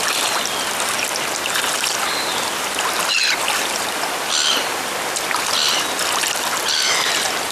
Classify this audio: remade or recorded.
recorded